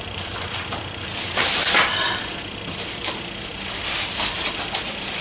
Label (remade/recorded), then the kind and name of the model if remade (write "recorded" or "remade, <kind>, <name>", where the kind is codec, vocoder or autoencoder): remade, vocoder, BigVGAN v2